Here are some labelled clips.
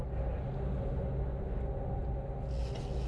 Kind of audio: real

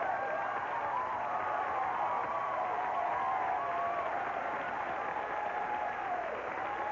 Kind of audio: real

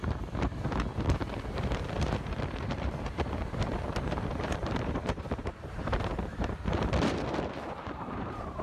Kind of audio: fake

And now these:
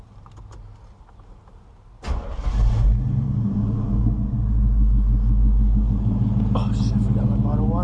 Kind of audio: real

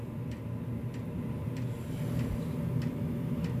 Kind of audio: real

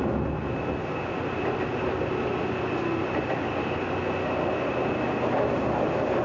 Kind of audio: real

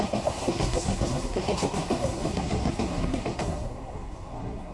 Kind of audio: fake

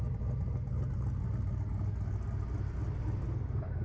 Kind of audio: real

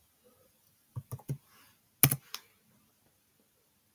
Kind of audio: real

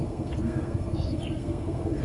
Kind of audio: fake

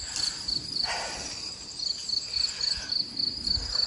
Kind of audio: real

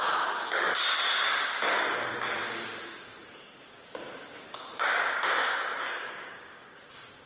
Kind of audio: fake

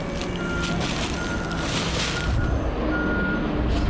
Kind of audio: real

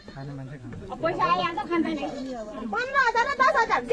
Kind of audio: fake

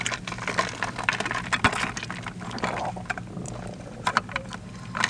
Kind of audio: real